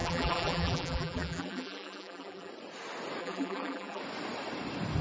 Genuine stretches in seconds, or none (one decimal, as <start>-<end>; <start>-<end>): 2.5-3.2; 4.0-5.0